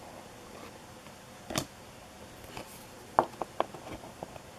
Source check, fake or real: real